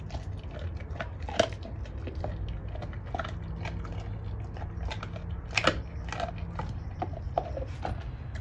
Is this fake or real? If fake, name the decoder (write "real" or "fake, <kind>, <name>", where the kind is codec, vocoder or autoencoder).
real